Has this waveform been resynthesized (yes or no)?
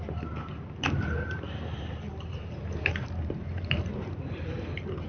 yes